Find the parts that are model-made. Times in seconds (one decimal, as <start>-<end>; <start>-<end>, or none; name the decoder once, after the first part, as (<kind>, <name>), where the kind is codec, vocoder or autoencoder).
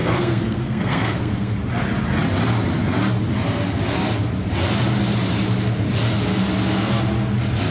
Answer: 0.0-1.5 (codec, SNAC)